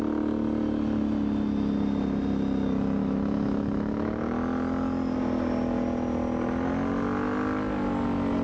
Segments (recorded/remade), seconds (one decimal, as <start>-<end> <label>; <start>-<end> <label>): 0.0-3.0 recorded; 3.0-4.3 remade; 4.3-8.4 recorded